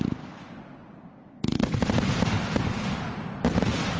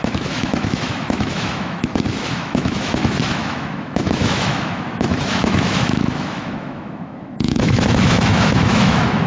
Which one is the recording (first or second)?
first